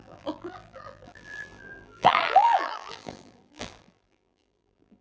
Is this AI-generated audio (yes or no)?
yes